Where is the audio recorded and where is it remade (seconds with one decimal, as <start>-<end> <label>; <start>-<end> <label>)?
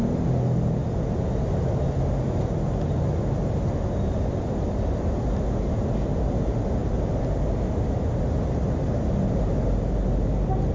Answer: 0.0-10.7 recorded